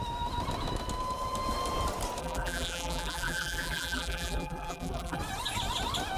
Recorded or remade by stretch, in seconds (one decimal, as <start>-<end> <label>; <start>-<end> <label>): 0.0-2.2 recorded; 2.2-5.2 remade; 5.2-6.2 recorded